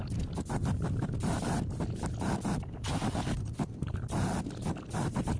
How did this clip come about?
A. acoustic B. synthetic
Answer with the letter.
A